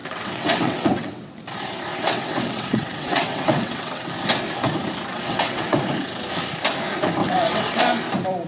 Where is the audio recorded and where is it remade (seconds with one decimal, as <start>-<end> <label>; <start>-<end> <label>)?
0.0-1.3 remade; 1.3-1.9 recorded; 1.9-4.1 remade; 4.1-5.1 recorded; 5.1-5.8 remade; 5.8-7.2 recorded; 7.2-7.8 remade; 7.8-8.5 recorded